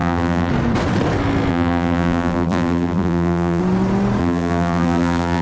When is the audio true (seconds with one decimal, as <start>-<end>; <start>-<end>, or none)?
0.5-1.5; 3.6-4.2